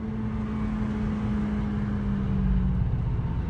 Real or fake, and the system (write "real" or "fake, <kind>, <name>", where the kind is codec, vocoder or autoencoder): real